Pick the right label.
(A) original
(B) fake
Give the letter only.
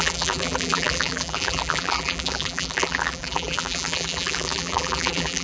B